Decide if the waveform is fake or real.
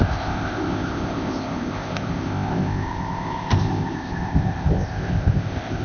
fake